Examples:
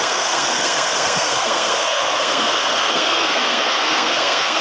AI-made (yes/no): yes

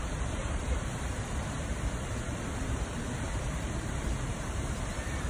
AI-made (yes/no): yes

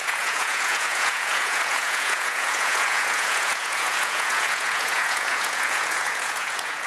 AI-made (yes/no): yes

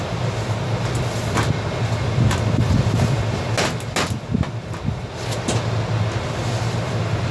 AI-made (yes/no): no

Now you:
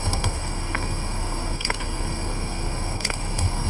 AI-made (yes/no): yes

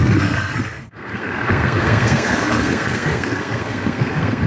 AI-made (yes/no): yes